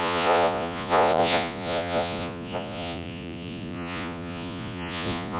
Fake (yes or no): yes